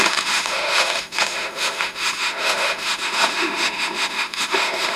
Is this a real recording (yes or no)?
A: no